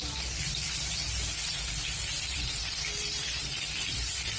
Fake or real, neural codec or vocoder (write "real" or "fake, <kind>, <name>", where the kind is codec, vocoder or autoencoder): fake, vocoder, BigVGAN v2